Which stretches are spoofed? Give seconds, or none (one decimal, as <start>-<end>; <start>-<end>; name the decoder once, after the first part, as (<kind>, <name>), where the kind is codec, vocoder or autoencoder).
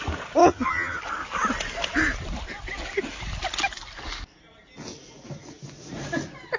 0.4-1.0 (vocoder, HiFi-GAN)